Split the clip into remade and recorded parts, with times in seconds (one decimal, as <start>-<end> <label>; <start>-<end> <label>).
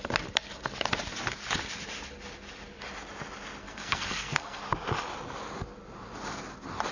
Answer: 0.0-3.6 recorded; 3.6-4.6 remade; 4.6-6.9 recorded